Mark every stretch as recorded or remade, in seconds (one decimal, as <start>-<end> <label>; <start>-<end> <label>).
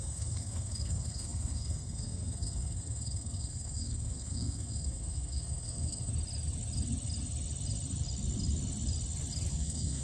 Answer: 0.0-6.1 remade; 6.1-9.5 recorded; 9.5-10.0 remade